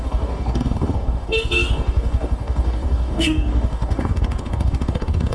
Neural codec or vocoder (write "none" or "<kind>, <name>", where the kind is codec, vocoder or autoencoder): codec, DAC